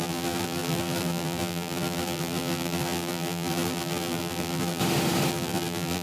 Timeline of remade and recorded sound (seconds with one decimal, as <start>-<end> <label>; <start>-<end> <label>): 0.0-4.8 remade; 4.8-5.3 recorded; 5.3-6.0 remade